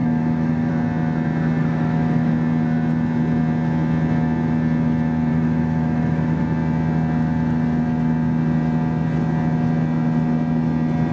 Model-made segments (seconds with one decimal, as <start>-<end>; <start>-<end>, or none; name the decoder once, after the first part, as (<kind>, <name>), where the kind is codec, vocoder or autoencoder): 0.0-0.7 (autoencoder, DAC-VAE); 1.6-2.3; 5.3-6.4